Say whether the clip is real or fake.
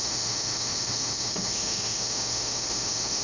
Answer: fake